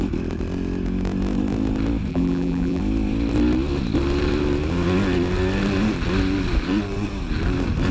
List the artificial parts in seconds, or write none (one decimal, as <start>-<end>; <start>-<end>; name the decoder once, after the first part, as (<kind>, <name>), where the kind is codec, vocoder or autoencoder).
2.1-2.8 (vocoder, BigVGAN v2)